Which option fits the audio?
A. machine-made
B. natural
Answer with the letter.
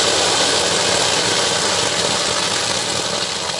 B